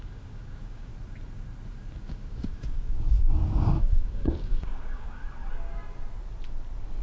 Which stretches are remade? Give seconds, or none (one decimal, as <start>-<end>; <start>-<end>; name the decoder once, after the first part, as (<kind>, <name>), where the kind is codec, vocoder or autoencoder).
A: 0.0-0.9 (codec, DAC); 2.0-5.2